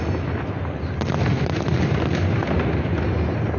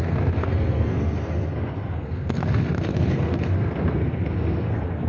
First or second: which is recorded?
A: first